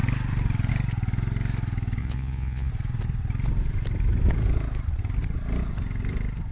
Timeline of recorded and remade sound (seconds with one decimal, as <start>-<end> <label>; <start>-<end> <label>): 0.0-2.0 recorded; 2.0-2.7 remade; 2.7-6.5 recorded